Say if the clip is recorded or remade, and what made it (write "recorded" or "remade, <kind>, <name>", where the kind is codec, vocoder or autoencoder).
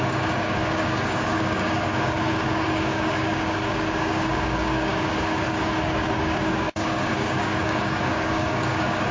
remade, codec, DAC